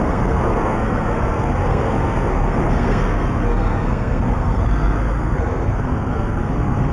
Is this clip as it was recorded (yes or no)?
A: no